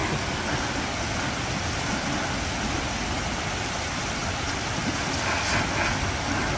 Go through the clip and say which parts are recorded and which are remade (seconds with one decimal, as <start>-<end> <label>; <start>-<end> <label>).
0.0-6.6 recorded